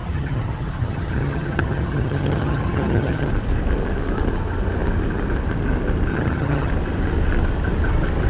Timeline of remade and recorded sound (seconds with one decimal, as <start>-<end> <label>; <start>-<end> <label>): 0.0-3.3 remade; 3.3-6.1 recorded; 6.1-6.7 remade; 6.7-8.3 recorded